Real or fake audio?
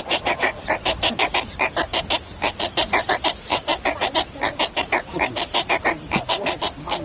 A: real